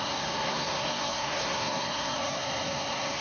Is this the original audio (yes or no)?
no